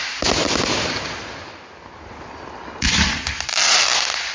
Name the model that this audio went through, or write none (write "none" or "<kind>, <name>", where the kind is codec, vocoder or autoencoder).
none